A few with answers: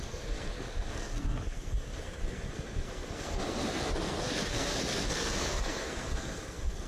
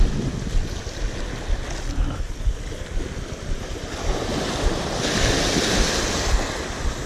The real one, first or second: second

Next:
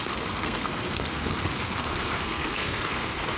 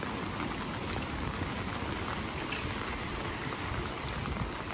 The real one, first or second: second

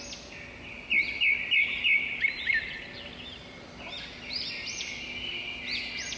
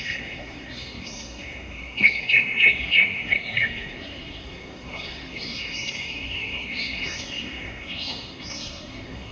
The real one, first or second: first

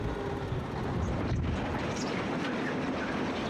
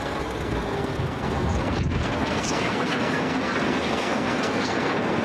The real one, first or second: first